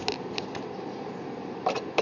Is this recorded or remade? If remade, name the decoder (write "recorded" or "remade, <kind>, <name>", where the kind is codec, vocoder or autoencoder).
recorded